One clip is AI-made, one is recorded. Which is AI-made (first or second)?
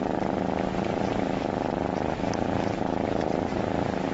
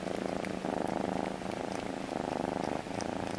first